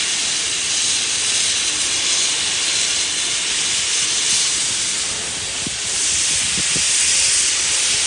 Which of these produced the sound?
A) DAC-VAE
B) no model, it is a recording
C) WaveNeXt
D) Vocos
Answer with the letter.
B